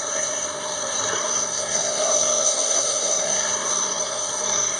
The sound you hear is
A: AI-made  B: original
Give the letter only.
A